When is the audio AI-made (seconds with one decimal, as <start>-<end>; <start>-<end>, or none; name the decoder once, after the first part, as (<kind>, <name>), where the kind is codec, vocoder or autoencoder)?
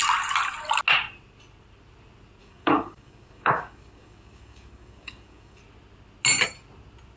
2.4-5.6 (codec, DAC)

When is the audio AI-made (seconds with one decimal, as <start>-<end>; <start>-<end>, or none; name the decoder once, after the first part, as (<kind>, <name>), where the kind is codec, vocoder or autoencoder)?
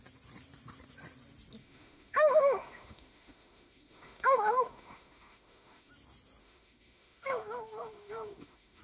1.6-5.9 (autoencoder, DAC-VAE); 6.4-8.8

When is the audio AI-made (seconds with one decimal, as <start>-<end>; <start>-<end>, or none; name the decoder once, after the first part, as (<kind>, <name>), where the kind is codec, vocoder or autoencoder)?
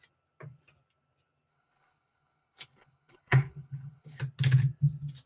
1.5-4.2 (codec, HILCodec)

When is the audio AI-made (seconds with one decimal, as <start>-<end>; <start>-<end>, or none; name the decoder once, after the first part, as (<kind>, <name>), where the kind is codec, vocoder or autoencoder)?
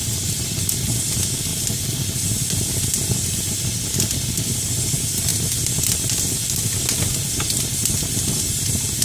none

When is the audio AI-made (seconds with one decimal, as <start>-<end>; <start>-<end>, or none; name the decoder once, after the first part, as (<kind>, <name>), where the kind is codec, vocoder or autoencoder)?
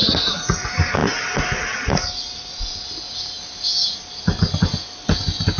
none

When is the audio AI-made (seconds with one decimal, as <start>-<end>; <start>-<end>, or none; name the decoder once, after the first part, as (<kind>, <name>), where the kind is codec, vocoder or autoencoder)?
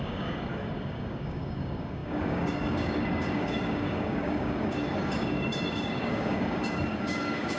0.0-7.6 (codec, DAC)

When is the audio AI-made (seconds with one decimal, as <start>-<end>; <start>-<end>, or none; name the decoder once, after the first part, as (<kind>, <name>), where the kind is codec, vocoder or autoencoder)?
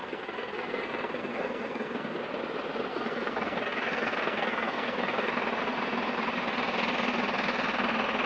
0.0-2.2 (codec, SNAC); 2.9-5.3